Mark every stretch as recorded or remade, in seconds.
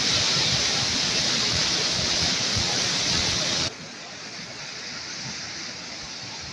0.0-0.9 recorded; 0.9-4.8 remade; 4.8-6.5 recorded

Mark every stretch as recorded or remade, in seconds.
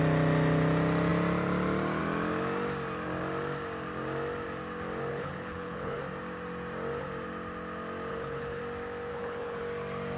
0.0-5.1 recorded; 5.1-6.0 remade; 6.0-8.1 recorded; 8.1-8.6 remade; 8.6-9.1 recorded; 9.1-9.6 remade; 9.6-10.2 recorded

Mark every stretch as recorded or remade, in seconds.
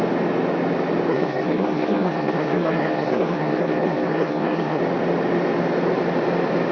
0.0-1.1 recorded; 1.1-4.8 remade; 4.8-6.7 recorded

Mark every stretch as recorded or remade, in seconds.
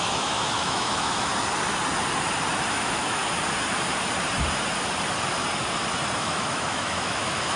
0.0-1.3 remade; 1.3-2.7 recorded; 2.7-3.2 remade; 3.2-6.2 recorded; 6.2-7.6 remade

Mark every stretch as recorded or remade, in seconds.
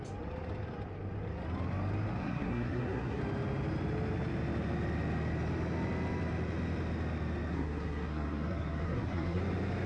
0.0-2.2 recorded; 2.2-3.2 remade; 3.2-7.5 recorded; 7.5-9.4 remade; 9.4-9.9 recorded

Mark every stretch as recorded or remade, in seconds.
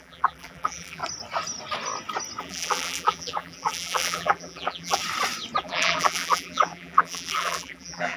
0.0-1.0 remade; 1.0-2.4 recorded; 2.4-5.0 remade; 5.0-5.6 recorded; 5.6-8.2 remade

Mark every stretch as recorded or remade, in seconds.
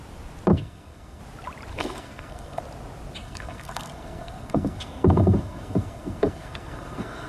0.0-0.5 recorded; 0.5-1.2 remade; 1.2-1.7 recorded; 1.7-2.6 remade; 2.6-3.2 recorded; 3.2-7.3 remade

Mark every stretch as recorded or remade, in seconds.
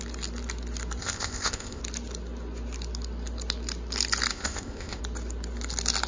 0.0-1.0 recorded; 1.0-1.8 remade; 1.8-4.3 recorded; 4.3-5.0 remade; 5.0-6.1 recorded